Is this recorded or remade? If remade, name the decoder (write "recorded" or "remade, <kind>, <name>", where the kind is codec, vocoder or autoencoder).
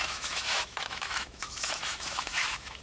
remade, autoencoder, DAC-VAE